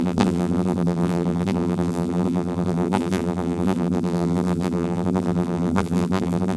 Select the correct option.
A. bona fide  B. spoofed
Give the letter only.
B